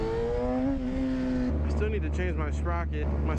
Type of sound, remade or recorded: recorded